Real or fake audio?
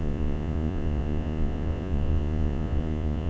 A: fake